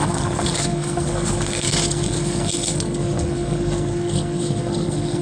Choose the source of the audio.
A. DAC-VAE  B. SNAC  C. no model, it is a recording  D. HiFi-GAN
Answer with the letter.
B